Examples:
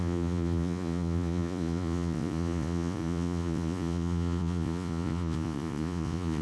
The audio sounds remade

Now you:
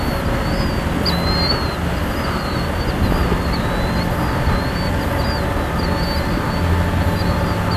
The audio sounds recorded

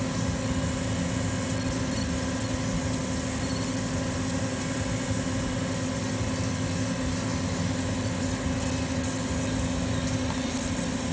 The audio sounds recorded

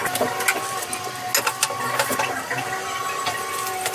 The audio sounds recorded